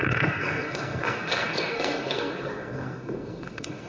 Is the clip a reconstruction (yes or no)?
yes